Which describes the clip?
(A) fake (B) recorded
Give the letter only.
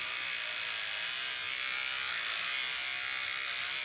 B